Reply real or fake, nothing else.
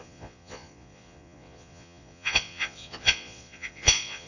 fake